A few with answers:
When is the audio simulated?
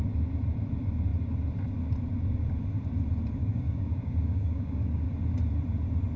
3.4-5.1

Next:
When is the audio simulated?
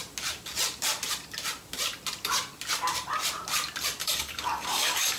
4.0-5.2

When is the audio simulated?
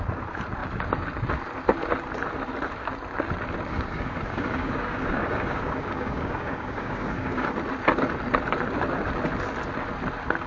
3.7-7.5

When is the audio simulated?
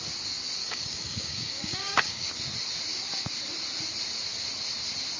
0.6-2.3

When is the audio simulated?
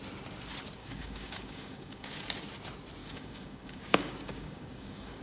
0.8-2.1; 3.0-5.2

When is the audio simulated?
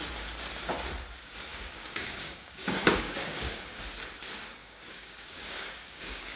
1.5-3.8; 4.6-6.4